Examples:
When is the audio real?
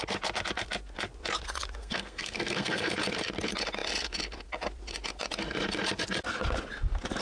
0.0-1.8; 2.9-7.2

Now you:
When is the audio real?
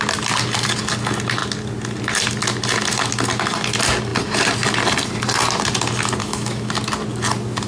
0.0-6.2; 6.7-7.7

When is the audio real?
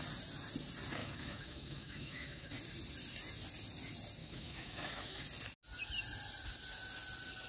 0.0-1.0; 2.5-4.2; 5.2-7.5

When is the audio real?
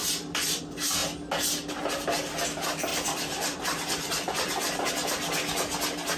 0.6-2.9; 4.9-6.2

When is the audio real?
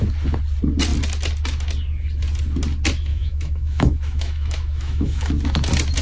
0.0-3.1; 5.3-6.0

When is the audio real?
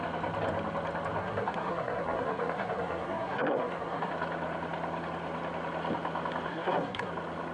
0.0-1.2; 4.1-6.5; 7.1-7.5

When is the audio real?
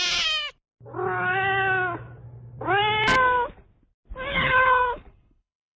0.0-4.3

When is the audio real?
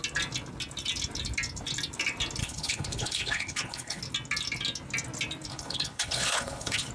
0.0-2.4; 4.0-5.5